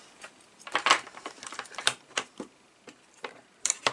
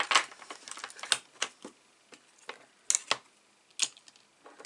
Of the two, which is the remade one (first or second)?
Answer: first